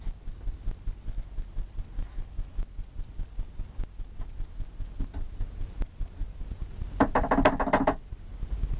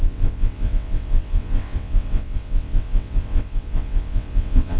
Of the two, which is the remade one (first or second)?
second